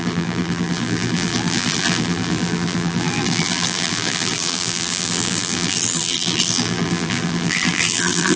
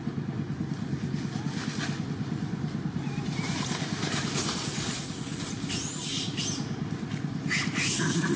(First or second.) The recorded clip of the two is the second